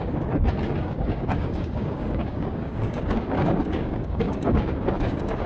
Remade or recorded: remade